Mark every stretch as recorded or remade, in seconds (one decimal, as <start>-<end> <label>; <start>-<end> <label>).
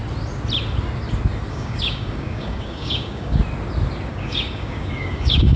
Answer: 0.0-1.5 recorded; 1.5-3.4 remade; 3.4-4.1 recorded; 4.1-5.6 remade